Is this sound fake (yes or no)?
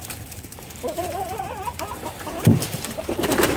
yes